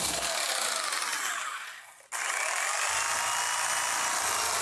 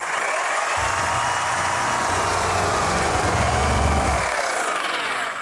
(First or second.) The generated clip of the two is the second